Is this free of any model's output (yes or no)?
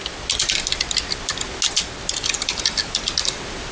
yes